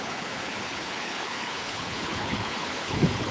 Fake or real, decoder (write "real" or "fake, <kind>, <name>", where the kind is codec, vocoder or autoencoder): fake, codec, HILCodec